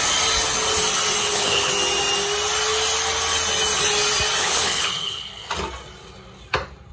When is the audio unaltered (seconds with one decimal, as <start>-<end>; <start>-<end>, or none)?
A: 0.0-1.2; 1.7-4.4; 5.5-6.9